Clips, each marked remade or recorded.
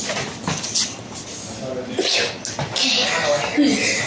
recorded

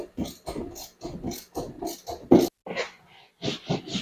recorded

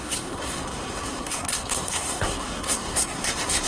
remade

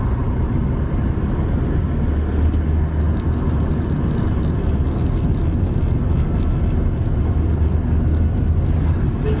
recorded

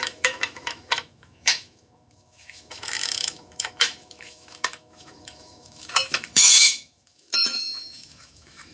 remade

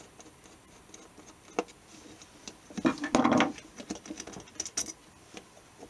recorded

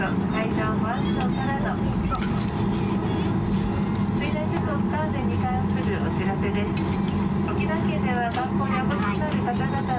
recorded